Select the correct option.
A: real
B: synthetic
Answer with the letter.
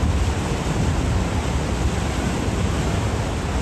A